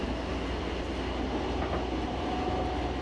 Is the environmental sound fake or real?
real